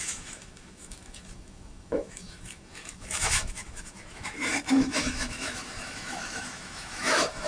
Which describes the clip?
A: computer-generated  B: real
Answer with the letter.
A